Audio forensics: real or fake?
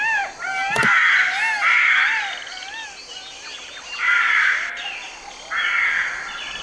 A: real